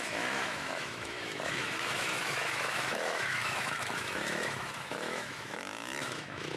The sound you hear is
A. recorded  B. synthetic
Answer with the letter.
B